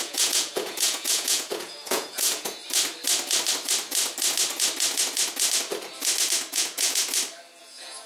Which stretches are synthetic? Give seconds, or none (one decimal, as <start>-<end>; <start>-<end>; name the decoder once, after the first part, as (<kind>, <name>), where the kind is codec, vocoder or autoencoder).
0.0-2.6 (vocoder, Vocos); 6.5-7.0; 7.6-8.1